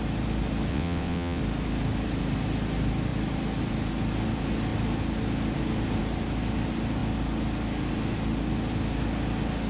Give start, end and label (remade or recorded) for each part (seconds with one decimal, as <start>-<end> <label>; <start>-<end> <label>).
0.0-0.7 recorded; 0.7-1.4 remade; 1.4-9.7 recorded